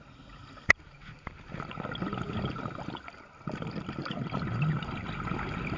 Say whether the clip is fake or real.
real